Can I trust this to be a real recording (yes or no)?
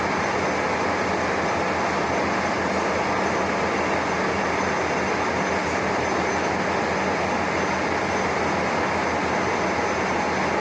yes